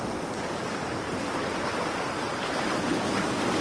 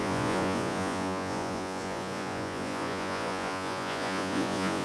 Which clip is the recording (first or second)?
first